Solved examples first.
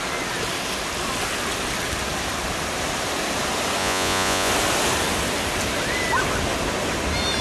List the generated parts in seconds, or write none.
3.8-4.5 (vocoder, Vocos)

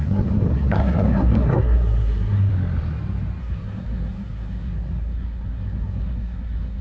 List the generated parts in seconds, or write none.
0.0-2.5 (codec, SNAC); 3.4-6.8